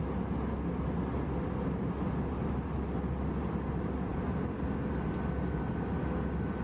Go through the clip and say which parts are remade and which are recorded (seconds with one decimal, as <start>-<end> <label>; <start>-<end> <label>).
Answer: 0.0-6.6 recorded